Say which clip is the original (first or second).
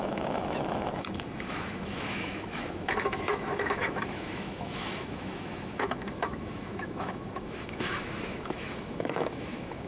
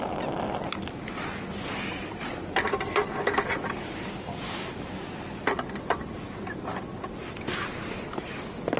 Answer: second